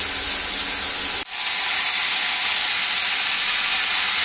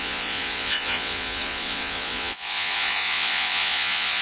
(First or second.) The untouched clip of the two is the first